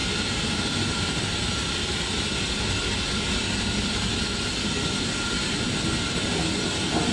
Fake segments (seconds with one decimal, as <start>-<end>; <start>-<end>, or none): none